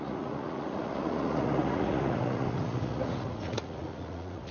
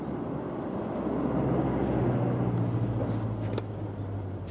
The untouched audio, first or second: second